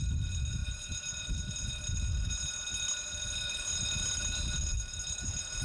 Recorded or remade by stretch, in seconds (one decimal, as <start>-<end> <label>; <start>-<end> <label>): 0.0-5.6 recorded